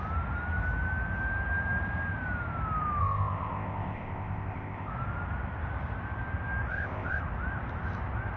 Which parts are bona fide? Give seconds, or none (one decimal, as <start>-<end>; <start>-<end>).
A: 0.0-3.0; 4.9-6.7; 7.2-8.4